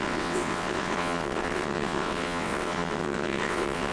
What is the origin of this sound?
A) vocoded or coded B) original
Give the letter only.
A